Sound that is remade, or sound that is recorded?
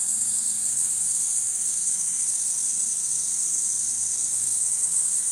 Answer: remade